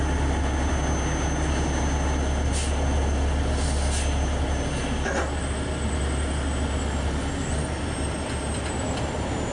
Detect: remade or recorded recorded